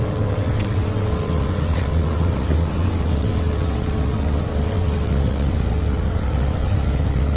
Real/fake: fake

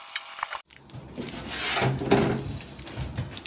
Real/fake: real